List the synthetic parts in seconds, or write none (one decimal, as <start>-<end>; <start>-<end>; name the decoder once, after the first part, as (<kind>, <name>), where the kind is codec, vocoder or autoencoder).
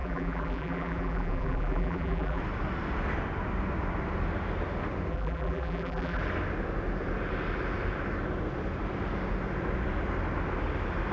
0.0-2.4 (vocoder, BigVGAN v2); 5.1-6.2